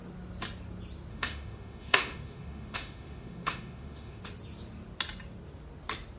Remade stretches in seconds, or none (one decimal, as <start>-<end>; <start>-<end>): 1.1-4.2